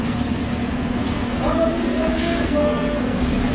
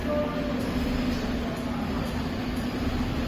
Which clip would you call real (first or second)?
second